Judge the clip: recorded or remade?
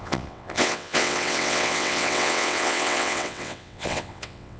remade